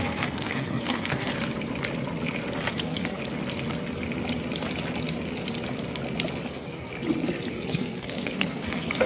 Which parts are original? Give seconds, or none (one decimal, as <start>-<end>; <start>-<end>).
1.3-2.7; 3.2-6.5; 6.9-7.5